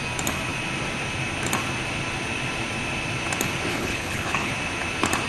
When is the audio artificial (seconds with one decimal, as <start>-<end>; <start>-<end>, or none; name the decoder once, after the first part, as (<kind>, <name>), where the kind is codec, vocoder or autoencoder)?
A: 3.7-4.5 (codec, HILCodec)

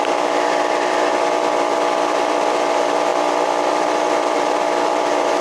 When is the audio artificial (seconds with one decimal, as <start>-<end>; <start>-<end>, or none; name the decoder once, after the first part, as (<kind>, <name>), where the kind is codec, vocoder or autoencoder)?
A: 0.0-3.1 (vocoder, BigVGAN v2); 3.7-5.4